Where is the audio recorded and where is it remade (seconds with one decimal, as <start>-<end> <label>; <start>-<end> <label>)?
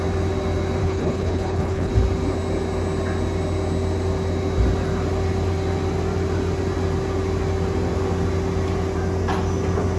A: 0.0-0.8 recorded; 0.8-1.9 remade; 1.9-10.0 recorded